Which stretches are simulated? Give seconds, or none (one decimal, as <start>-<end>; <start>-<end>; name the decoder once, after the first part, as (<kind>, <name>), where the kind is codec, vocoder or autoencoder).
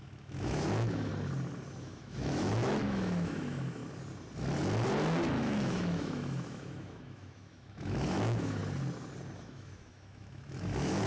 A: 0.0-1.1 (autoencoder, DAC-VAE); 1.8-3.8; 5.4-8.6; 9.4-11.1